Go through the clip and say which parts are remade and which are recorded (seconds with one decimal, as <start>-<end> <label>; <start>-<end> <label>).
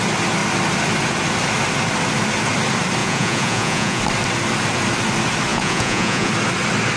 0.0-3.0 recorded; 3.0-4.0 remade; 4.0-5.5 recorded; 5.5-6.3 remade; 6.3-7.0 recorded